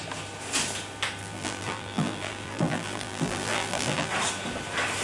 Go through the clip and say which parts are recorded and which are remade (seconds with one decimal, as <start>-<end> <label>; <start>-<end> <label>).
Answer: 0.0-1.2 recorded; 1.2-4.1 remade; 4.1-5.0 recorded